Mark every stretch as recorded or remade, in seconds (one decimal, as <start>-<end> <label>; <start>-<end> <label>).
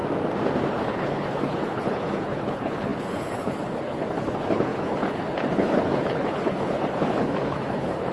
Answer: 0.0-0.7 recorded; 0.7-8.1 remade